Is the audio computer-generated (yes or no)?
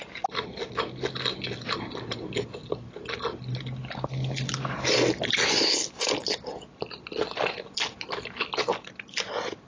no